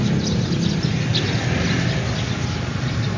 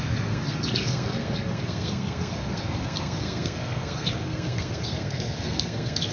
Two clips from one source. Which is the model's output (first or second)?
second